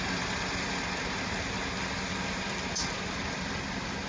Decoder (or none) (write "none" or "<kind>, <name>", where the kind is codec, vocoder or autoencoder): none